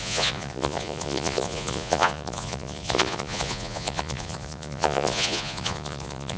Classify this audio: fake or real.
fake